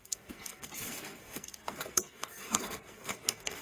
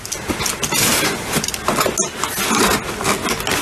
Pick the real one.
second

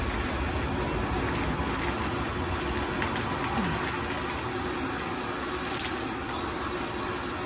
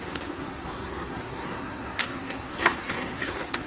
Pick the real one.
first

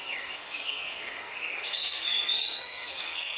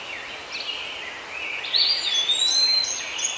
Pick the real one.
second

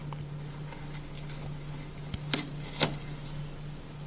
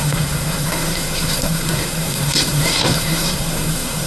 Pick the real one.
first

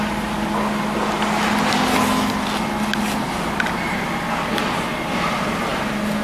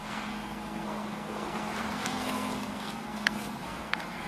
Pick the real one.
first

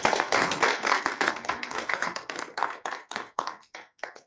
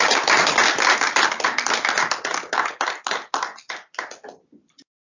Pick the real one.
second